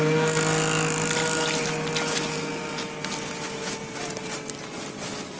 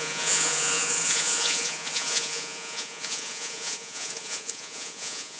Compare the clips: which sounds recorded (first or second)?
first